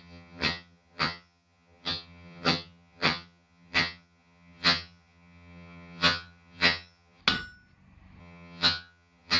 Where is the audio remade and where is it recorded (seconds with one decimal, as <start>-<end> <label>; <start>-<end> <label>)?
0.0-7.2 remade; 7.2-8.2 recorded; 8.2-9.4 remade